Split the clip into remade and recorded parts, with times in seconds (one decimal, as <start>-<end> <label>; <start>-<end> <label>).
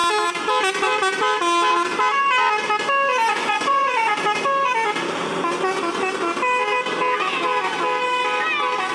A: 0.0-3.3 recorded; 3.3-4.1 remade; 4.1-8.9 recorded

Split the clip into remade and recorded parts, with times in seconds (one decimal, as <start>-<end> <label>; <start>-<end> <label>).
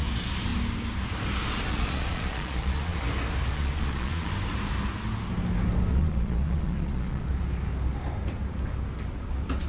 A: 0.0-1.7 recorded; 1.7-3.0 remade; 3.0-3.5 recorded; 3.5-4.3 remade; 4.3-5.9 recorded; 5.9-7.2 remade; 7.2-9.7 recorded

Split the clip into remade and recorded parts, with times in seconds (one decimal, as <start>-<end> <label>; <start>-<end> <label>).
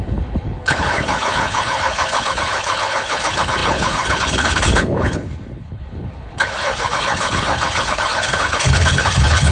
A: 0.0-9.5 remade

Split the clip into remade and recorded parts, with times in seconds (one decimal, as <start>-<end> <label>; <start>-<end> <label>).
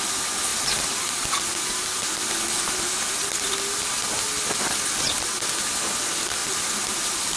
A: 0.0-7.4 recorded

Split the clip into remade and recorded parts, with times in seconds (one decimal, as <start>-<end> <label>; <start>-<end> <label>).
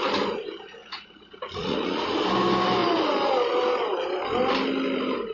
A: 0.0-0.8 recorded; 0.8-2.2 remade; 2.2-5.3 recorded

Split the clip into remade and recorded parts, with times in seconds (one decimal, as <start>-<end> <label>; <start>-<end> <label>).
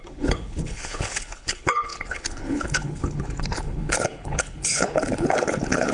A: 0.0-5.9 remade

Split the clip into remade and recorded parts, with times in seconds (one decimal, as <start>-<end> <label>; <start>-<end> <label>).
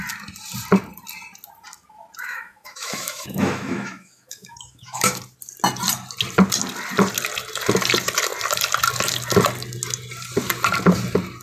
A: 0.0-2.2 recorded; 2.2-5.2 remade; 5.2-11.4 recorded